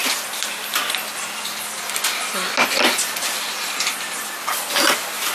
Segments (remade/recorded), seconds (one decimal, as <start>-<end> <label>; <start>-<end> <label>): 0.0-5.3 recorded